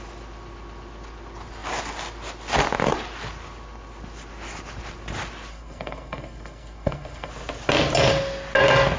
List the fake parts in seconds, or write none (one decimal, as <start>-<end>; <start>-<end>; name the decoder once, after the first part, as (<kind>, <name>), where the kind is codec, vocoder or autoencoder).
5.5-7.3 (codec, SNAC)